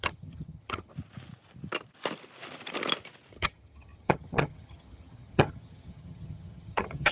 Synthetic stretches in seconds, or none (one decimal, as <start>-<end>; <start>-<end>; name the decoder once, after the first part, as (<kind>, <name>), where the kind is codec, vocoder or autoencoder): 0.0-0.9 (vocoder, HiFi-GAN); 3.3-7.1